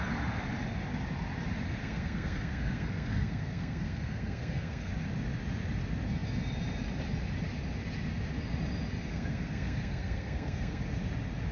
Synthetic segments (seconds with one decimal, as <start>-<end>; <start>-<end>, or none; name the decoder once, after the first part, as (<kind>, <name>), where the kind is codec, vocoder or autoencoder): 1.8-4.9 (codec, SNAC); 9.1-10.8